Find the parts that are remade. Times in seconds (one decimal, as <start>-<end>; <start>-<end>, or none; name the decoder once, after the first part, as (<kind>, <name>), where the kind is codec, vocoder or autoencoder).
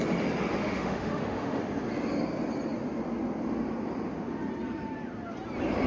0.6-1.6 (autoencoder, DAC-VAE)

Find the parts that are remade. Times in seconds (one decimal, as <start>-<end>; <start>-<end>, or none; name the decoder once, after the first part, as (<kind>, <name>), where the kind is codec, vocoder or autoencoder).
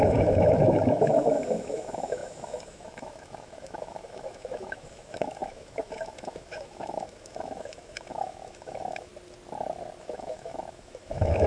0.0-9.1 (autoencoder, DAC-VAE); 10.0-11.5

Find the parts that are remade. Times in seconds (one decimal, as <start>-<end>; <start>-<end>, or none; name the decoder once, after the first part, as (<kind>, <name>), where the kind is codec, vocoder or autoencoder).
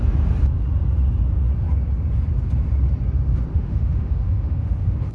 3.5-5.1 (autoencoder, DAC-VAE)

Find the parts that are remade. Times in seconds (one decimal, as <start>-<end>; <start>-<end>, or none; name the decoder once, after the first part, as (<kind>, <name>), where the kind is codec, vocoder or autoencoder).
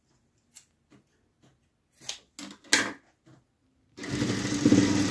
none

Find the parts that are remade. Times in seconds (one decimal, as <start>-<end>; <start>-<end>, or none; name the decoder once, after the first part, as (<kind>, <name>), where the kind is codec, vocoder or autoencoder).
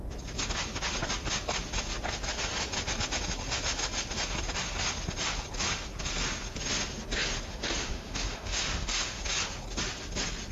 7.5-9.2 (autoencoder, DAC-VAE)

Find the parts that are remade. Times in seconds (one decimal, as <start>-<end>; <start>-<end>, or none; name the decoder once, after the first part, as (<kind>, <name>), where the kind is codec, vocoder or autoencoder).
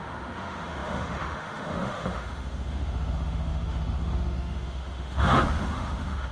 0.0-6.3 (autoencoder, DAC-VAE)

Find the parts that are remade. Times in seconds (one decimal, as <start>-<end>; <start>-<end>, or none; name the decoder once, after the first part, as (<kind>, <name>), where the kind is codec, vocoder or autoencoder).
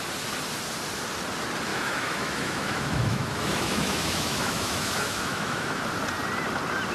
1.7-5.8 (autoencoder, DAC-VAE)